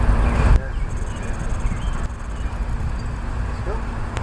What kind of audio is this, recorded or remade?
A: recorded